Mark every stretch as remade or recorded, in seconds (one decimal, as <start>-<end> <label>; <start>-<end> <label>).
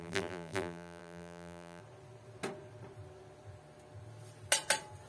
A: 0.0-1.8 remade; 1.8-5.1 recorded